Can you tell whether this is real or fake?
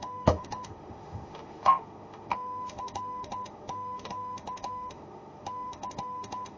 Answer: fake